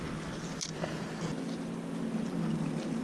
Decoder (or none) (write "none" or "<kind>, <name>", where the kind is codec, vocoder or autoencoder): none